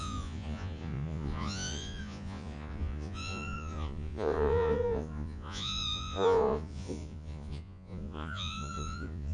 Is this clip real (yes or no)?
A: no